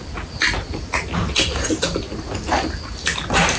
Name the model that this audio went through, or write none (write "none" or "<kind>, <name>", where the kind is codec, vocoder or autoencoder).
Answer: none